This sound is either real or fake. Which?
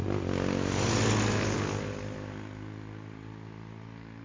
real